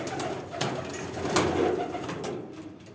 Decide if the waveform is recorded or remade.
recorded